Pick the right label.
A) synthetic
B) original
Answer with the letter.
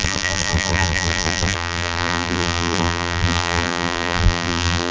A